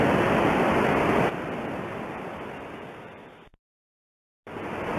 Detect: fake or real real